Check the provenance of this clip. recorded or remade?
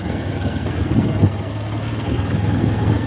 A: remade